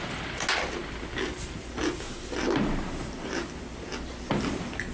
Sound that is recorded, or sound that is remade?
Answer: recorded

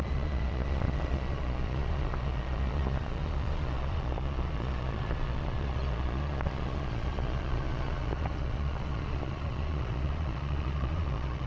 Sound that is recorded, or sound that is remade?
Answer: remade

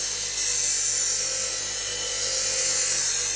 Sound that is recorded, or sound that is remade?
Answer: recorded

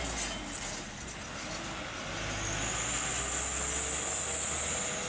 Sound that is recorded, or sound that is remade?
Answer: recorded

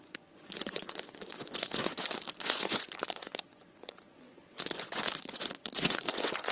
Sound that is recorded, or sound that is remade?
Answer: remade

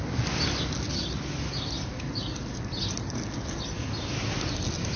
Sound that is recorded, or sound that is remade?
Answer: recorded